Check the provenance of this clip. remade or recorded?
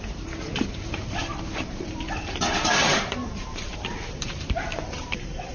remade